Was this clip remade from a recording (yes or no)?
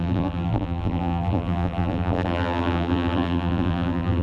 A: yes